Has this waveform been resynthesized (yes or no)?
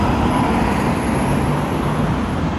no